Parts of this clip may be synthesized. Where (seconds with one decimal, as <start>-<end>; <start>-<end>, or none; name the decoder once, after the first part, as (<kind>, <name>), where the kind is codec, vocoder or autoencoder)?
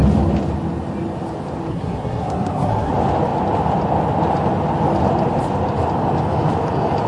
1.7-2.9 (codec, SNAC)